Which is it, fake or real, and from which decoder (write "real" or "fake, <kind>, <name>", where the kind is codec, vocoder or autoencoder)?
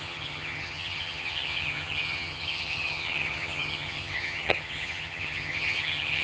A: fake, vocoder, HiFi-GAN